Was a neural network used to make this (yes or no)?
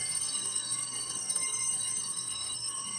yes